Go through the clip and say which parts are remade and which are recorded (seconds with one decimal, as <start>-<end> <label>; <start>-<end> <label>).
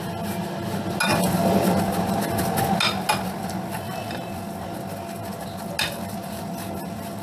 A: 0.0-7.2 recorded